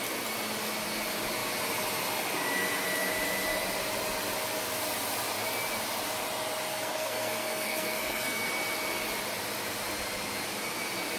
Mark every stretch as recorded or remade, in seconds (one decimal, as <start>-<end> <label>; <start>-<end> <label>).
0.0-6.7 recorded; 6.7-8.5 remade; 8.5-11.2 recorded